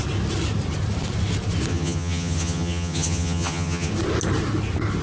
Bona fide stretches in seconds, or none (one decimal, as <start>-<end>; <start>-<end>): 0.0-1.7; 3.9-5.0